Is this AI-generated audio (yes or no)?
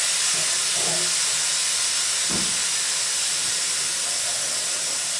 no